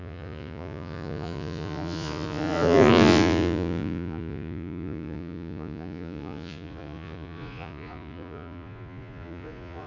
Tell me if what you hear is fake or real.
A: fake